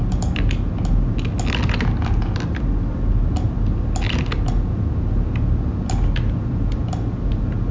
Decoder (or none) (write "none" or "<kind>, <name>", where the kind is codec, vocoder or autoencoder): none